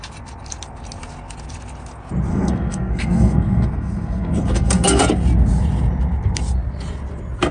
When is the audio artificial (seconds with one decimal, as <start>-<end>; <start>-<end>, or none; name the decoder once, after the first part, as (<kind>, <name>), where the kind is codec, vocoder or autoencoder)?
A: 2.3-5.0 (codec, SNAC)

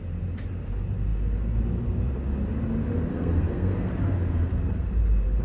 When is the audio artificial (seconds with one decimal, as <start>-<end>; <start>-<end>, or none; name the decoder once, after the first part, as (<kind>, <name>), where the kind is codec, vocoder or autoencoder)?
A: 3.1-3.9 (codec, SNAC)

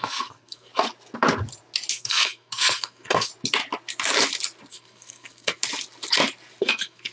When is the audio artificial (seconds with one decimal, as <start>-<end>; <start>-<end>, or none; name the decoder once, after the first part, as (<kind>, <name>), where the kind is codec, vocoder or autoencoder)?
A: 0.0-0.7 (codec, SNAC); 1.9-3.3; 4.7-5.6; 6.6-7.1

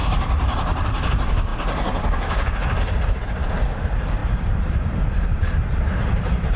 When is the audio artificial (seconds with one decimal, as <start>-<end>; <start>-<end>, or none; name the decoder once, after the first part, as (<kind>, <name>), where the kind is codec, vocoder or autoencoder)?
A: 0.0-1.1 (vocoder, BigVGAN v2); 4.2-5.1

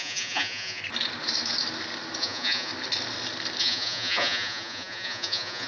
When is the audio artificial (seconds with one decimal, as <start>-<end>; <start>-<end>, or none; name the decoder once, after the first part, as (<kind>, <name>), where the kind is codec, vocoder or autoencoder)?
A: 0.0-0.8 (vocoder, Vocos); 2.2-2.7; 3.6-5.7

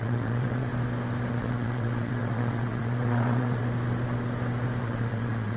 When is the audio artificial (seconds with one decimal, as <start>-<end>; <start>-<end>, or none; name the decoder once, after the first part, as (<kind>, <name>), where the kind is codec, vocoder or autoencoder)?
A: 0.0-0.7 (vocoder, WaveNeXt); 1.3-3.6; 4.8-5.6